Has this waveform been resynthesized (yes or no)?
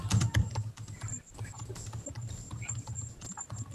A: no